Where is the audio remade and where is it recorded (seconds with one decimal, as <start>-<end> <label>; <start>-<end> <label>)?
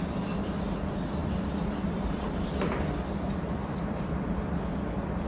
0.0-1.2 recorded; 1.2-4.4 remade; 4.4-5.3 recorded